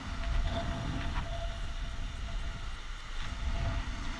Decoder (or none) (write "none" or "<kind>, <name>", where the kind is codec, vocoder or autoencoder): none